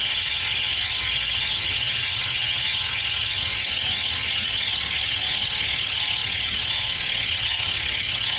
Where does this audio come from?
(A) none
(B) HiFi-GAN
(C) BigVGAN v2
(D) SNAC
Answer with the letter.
B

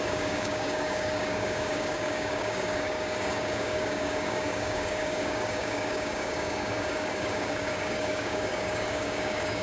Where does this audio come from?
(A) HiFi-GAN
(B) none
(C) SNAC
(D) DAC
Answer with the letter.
D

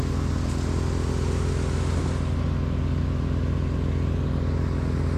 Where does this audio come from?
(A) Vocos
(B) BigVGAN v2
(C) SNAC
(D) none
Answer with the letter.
D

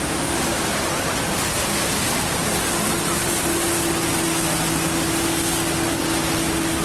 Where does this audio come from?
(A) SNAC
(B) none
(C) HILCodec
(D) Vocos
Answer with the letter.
B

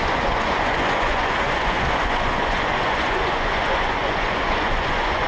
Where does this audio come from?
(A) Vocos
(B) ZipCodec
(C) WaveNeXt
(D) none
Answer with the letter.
A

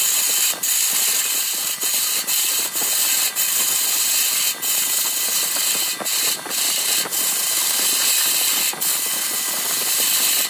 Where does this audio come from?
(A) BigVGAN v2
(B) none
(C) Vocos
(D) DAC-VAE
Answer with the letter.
B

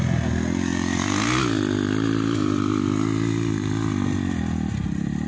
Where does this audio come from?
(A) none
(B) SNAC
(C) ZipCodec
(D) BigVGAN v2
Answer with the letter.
A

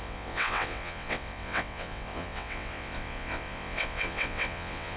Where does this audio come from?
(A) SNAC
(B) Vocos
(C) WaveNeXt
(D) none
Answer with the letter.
C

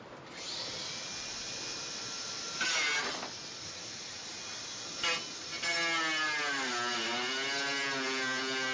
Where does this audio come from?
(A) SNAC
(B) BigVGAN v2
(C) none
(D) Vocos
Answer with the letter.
C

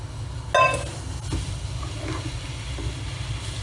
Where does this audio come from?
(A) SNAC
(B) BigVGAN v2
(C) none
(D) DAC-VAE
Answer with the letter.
C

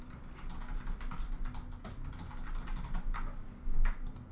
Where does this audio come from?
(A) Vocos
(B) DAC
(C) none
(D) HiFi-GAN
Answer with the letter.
C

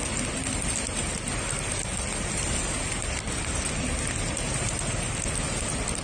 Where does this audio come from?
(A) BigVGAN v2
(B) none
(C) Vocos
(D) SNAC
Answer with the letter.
B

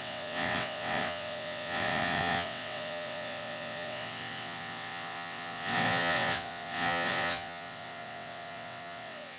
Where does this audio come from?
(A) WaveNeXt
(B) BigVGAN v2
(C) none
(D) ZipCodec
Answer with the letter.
A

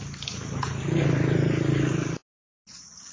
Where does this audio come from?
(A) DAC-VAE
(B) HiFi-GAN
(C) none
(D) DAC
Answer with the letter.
C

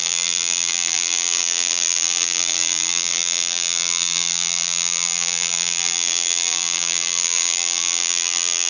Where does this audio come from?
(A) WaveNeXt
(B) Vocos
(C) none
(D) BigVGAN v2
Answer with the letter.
D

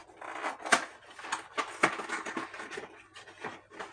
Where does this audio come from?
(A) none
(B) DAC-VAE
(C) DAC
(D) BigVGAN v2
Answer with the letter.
A